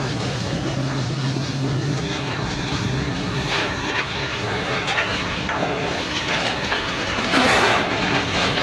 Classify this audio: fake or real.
fake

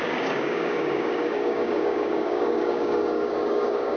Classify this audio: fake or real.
fake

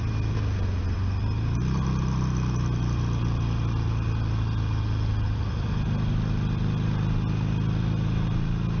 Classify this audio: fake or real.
real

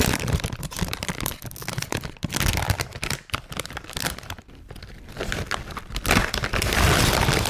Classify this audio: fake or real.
real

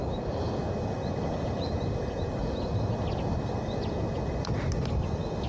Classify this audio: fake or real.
real